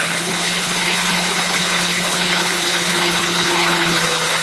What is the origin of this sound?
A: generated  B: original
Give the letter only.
A